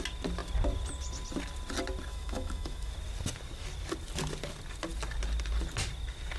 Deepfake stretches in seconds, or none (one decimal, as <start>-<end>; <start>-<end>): 2.1-2.9